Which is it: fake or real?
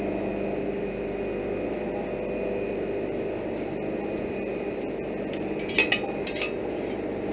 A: real